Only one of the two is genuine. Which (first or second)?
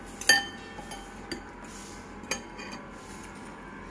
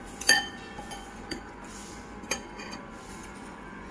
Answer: first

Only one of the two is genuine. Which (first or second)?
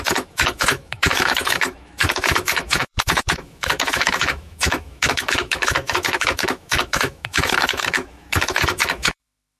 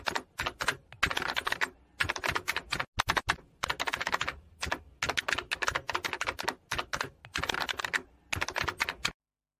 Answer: second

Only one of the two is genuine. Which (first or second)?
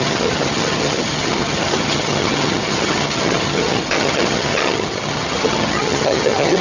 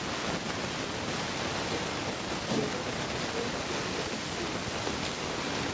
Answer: second